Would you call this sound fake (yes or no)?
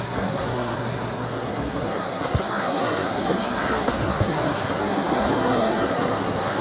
yes